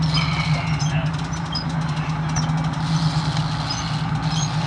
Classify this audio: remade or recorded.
recorded